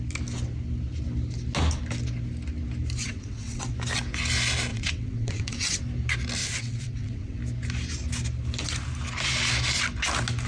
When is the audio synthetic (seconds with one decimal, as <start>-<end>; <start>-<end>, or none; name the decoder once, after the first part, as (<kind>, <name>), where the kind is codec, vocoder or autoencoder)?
3.0-3.7 (vocoder, WaveNeXt); 4.7-5.8; 6.4-7.4